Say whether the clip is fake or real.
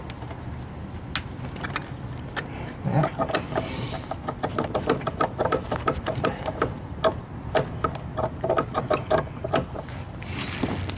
real